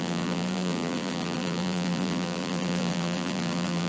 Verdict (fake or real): fake